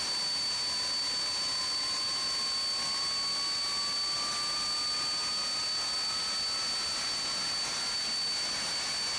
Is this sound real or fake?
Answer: real